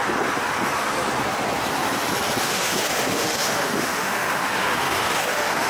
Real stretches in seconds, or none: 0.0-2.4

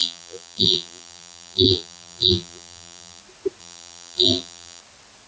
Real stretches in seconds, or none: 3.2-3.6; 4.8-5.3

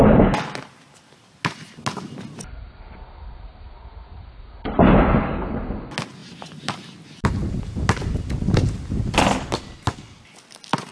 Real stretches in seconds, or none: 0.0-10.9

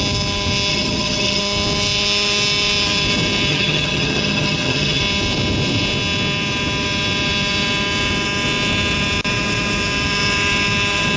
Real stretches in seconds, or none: 0.0-0.7; 1.4-3.5; 5.0-11.2

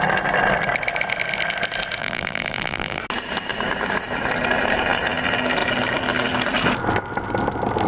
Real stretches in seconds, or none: 0.0-2.0; 3.0-7.9